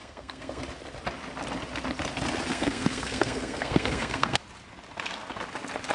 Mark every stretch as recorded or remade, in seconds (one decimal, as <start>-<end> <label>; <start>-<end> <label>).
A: 0.0-0.6 remade; 0.6-2.5 recorded; 2.5-4.4 remade; 4.4-5.9 recorded